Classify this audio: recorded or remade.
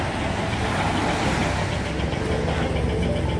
recorded